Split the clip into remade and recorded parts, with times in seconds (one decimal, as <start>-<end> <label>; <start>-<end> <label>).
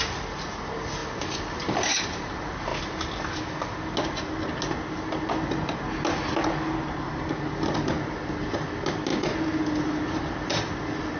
0.0-11.2 recorded